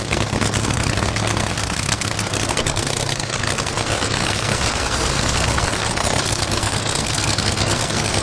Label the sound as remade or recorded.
remade